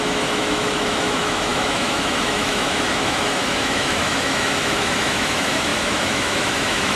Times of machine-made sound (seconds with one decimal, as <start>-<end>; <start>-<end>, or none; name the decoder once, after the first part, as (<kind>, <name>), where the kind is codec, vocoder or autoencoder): 0.0-7.0 (autoencoder, DAC-VAE)